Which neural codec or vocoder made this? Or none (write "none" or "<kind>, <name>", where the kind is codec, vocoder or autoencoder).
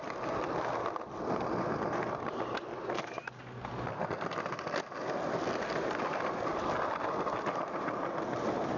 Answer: none